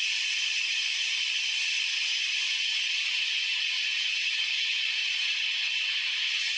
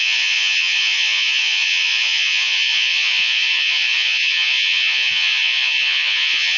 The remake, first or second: second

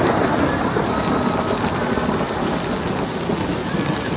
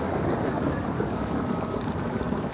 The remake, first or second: second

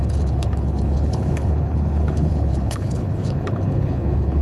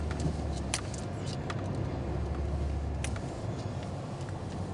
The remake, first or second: first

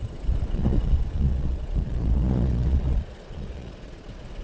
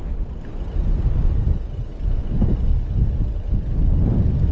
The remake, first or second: first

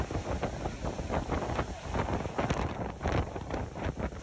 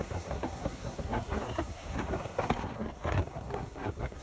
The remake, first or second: second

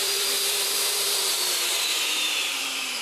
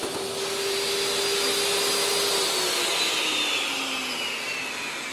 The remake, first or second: first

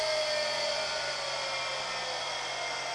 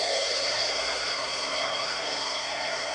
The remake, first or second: second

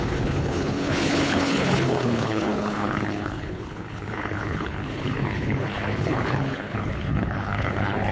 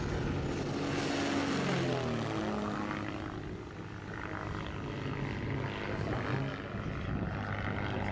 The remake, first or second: first